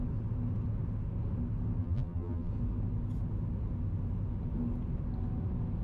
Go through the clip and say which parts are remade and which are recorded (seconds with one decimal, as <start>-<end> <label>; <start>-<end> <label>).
0.0-1.8 recorded; 1.8-2.5 remade; 2.5-5.8 recorded